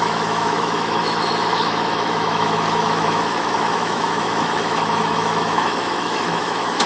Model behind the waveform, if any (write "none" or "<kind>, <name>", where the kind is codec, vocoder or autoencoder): autoencoder, DAC-VAE